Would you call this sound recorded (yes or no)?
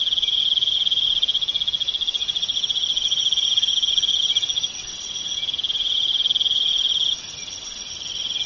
yes